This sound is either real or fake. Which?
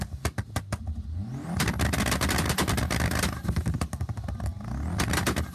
real